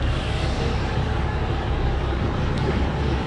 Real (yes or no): no